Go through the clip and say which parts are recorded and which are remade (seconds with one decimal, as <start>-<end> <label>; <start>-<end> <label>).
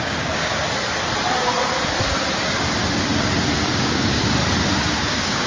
0.0-0.5 remade; 0.5-3.7 recorded; 3.7-4.2 remade; 4.2-5.0 recorded; 5.0-5.5 remade